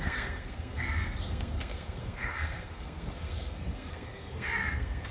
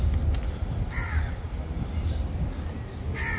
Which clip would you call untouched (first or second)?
second